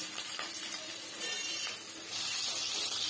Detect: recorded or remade recorded